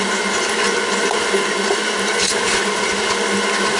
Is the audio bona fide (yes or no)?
yes